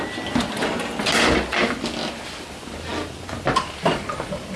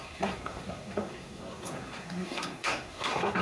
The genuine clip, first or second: first